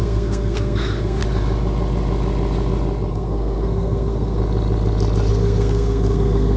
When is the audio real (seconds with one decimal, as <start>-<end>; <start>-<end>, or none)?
1.2-3.1; 4.4-5.3